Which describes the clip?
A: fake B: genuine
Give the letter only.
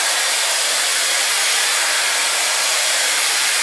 A